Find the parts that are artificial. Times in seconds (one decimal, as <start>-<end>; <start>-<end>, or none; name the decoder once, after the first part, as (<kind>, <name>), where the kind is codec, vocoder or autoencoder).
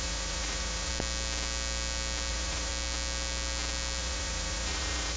0.0-0.9 (vocoder, Vocos); 2.3-2.7; 4.0-5.2